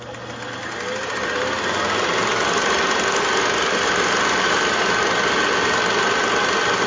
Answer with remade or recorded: recorded